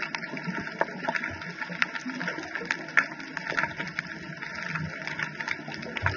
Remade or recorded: recorded